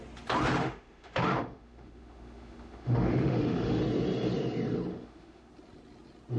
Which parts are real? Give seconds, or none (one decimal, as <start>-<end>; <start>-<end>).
0.0-0.6; 3.8-4.9; 5.5-6.4